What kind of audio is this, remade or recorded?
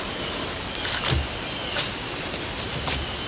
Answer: recorded